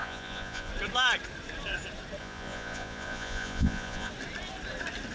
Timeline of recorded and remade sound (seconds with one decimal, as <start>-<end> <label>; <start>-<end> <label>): 0.0-0.7 remade; 0.7-2.2 recorded; 2.2-4.1 remade; 4.1-5.1 recorded